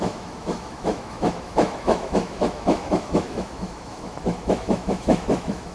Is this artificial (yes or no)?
yes